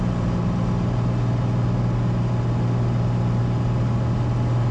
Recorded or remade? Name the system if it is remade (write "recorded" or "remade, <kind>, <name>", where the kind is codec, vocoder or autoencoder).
recorded